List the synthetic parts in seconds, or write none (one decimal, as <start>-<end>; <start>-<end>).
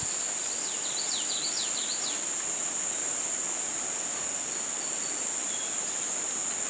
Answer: none